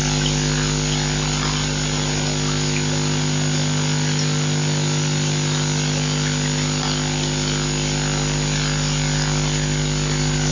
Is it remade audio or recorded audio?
recorded